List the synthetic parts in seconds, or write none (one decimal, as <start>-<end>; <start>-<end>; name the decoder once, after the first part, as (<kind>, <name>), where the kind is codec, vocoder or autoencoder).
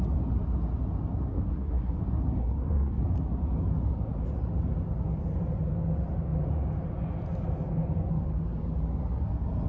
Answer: 1.3-2.0 (codec, SNAC); 2.4-3.0